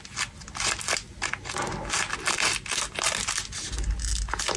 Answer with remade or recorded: recorded